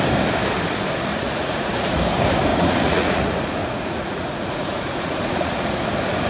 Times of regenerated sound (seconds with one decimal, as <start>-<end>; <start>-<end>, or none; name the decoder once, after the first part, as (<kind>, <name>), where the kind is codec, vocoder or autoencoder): 1.1-2.0 (vocoder, Vocos); 2.5-3.2; 3.6-5.8